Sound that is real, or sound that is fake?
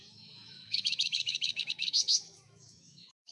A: fake